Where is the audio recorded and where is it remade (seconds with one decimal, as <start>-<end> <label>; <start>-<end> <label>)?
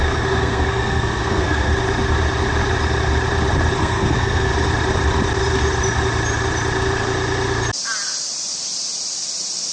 0.0-1.7 remade; 1.7-3.8 recorded; 3.8-4.5 remade; 4.5-9.7 recorded